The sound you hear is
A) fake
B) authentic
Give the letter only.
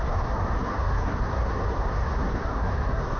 A